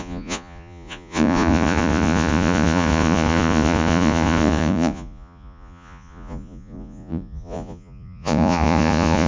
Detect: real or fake fake